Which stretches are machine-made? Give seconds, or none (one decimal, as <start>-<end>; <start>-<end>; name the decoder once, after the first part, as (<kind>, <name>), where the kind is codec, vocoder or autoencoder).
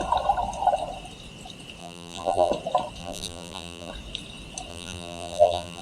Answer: 1.8-2.5 (vocoder, BigVGAN v2); 3.0-3.9; 4.7-5.8